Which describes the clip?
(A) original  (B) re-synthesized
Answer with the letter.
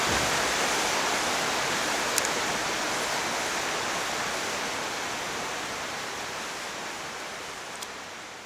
A